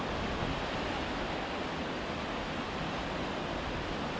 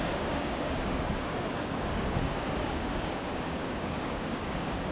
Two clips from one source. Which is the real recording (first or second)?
first